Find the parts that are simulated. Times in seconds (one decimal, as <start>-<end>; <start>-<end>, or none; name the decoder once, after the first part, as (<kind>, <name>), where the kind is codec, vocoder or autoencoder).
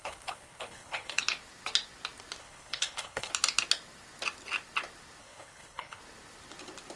0.0-1.2 (codec, HILCodec); 2.4-3.3; 5.2-6.0